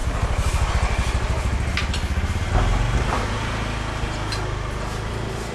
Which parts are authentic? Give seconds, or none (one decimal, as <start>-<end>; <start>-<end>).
0.0-5.5